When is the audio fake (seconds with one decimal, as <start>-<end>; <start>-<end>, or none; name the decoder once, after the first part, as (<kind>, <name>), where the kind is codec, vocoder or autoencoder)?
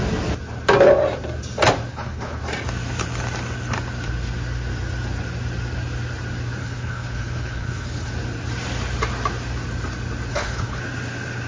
1.9-2.4 (codec, HILCodec); 6.6-8.1; 10.3-10.8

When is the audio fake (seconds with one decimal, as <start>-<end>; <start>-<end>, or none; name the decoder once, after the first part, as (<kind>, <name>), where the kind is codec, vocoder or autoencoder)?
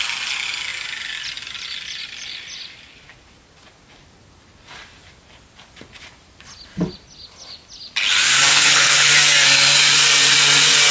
8.5-9.1 (codec, HILCodec)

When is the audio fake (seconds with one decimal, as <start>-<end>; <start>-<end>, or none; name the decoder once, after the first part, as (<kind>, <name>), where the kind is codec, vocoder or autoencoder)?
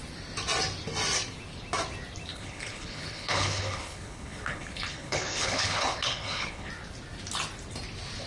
2.3-6.7 (codec, HILCodec)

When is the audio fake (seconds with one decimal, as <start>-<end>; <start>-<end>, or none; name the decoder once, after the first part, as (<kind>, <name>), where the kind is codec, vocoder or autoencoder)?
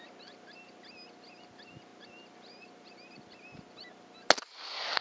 none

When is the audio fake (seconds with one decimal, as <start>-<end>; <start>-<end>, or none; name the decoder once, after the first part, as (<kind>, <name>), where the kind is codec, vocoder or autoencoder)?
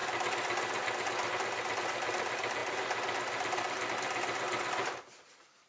none